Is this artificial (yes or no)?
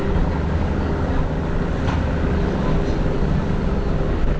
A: no